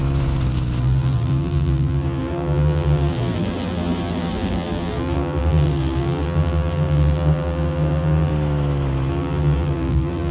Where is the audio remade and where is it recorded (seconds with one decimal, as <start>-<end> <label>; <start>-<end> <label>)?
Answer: 0.0-0.8 recorded; 0.8-8.3 remade; 8.3-9.1 recorded; 9.1-10.3 remade